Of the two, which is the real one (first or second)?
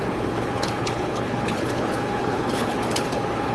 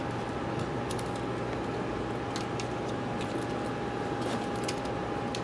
second